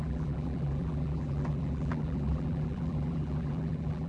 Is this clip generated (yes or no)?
yes